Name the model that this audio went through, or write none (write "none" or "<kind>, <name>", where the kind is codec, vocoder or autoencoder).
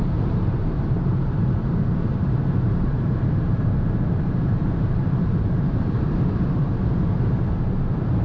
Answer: vocoder, BigVGAN v2